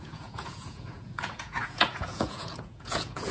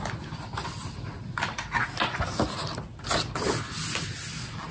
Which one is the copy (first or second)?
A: first